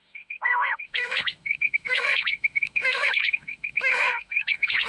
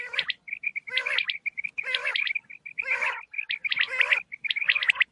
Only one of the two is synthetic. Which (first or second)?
first